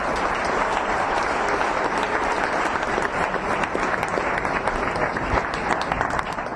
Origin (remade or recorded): recorded